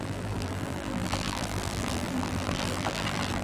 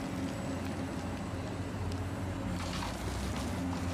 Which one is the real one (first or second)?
second